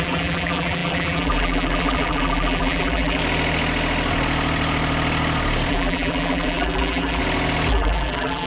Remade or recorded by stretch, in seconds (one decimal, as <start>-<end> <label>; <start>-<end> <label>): 0.0-3.2 remade; 3.2-5.7 recorded; 5.7-7.2 remade; 7.2-7.7 recorded; 7.7-8.5 remade